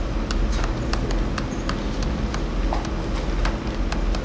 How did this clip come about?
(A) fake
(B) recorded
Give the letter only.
B